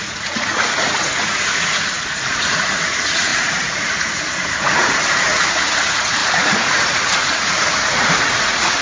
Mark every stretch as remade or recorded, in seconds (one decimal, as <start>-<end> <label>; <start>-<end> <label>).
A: 0.0-8.8 remade